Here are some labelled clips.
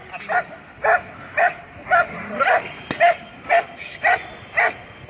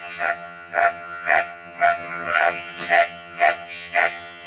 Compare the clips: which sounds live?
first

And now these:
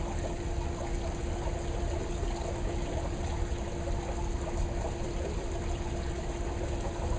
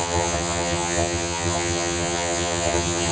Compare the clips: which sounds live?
first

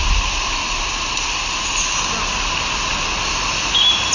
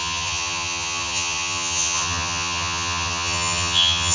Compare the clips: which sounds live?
first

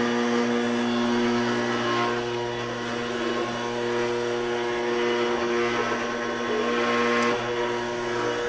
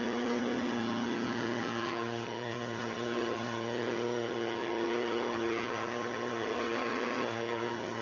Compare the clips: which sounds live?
first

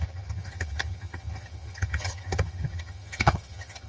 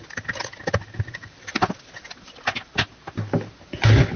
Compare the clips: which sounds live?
second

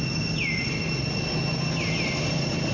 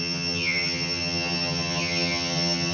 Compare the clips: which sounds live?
first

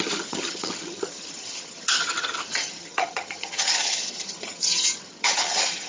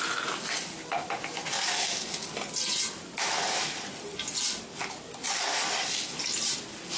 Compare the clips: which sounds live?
second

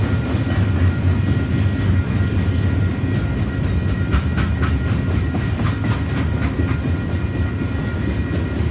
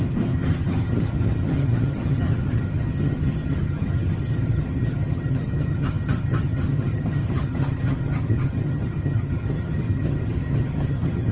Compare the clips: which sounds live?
first